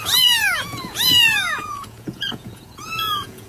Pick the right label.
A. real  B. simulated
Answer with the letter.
B